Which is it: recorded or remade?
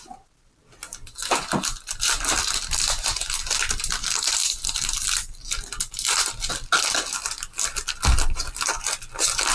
recorded